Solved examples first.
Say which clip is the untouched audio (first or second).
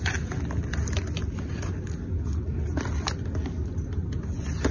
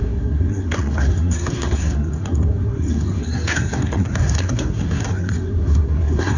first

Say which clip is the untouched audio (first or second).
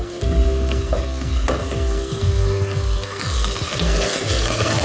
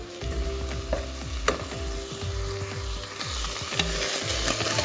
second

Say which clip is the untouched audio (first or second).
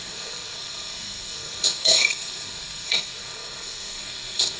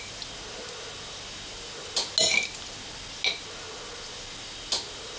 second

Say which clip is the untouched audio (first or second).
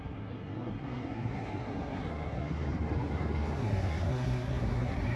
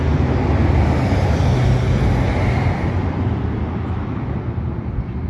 second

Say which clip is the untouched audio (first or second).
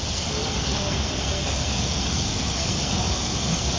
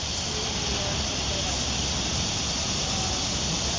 second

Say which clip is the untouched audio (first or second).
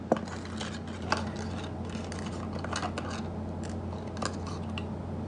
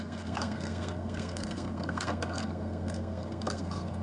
first